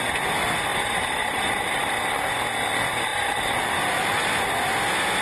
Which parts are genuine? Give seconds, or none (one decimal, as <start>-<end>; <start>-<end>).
0.0-0.7; 1.6-3.1; 4.3-5.2